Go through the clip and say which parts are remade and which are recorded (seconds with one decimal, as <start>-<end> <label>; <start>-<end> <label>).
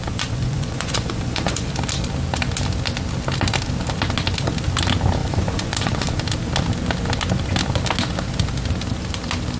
0.0-1.7 remade; 1.7-5.2 recorded; 5.2-6.1 remade; 6.1-9.6 recorded